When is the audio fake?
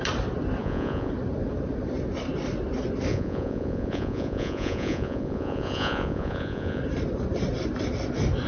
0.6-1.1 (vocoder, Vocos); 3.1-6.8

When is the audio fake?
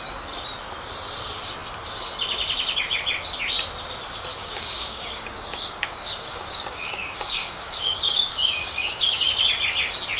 4.3-9.3 (codec, DAC)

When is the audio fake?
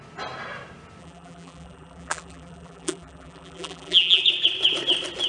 1.0-4.2 (vocoder, BigVGAN v2)